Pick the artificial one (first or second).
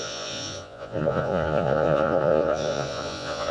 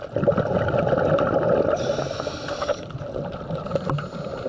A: first